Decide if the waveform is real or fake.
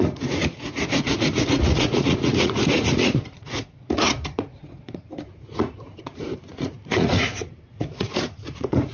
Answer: fake